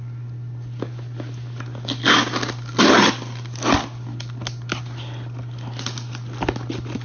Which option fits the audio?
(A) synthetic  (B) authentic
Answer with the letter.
B